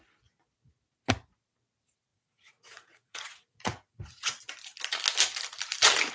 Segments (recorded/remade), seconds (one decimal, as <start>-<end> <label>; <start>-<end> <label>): 0.0-2.1 recorded; 2.1-4.4 remade; 4.4-6.1 recorded